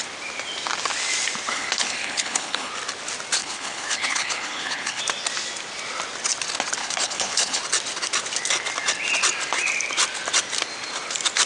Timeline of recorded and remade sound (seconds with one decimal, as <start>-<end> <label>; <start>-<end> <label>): 0.0-1.5 recorded; 1.5-2.7 remade; 2.7-3.4 recorded; 3.4-5.0 remade; 5.0-6.8 recorded; 6.8-7.6 remade; 7.6-11.5 recorded